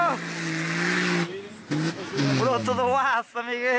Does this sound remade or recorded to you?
recorded